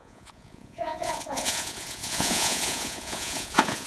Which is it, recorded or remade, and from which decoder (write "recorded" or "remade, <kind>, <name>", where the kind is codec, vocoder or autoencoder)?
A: remade, vocoder, Vocos